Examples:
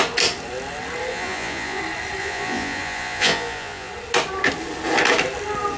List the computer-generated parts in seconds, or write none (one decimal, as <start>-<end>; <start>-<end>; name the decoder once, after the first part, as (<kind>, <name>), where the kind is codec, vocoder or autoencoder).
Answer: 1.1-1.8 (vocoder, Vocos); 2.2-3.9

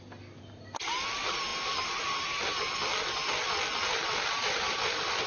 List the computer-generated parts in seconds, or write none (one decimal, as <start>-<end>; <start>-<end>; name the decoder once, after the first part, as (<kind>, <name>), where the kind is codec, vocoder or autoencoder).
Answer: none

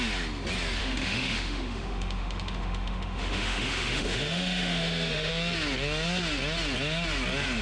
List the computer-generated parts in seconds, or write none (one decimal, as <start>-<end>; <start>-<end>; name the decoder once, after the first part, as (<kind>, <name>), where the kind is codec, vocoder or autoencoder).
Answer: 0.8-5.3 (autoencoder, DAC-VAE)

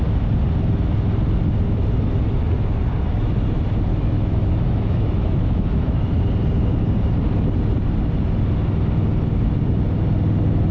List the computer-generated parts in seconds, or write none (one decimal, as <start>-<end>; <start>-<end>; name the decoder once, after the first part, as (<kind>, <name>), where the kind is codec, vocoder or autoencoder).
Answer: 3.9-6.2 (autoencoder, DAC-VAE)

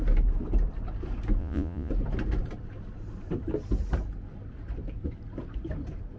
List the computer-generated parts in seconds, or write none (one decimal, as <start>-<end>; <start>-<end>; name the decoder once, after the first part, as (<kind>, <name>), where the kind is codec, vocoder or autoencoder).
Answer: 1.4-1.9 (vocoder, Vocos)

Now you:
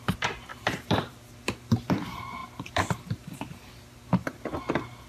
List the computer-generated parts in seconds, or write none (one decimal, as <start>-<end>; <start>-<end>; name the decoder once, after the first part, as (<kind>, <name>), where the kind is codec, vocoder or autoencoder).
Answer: 0.5-2.0 (vocoder, BigVGAN v2); 2.4-4.4

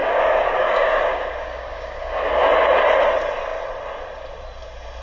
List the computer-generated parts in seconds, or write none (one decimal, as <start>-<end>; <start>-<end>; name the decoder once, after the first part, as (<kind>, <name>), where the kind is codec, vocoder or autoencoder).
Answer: 0.0-2.5 (codec, DAC)

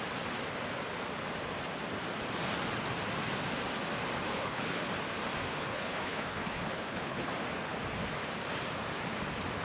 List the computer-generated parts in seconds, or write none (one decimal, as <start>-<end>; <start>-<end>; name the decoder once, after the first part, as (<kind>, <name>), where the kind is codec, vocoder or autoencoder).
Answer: 4.3-4.8 (codec, HILCodec); 5.5-7.3